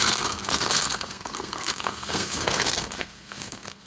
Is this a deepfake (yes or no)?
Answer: yes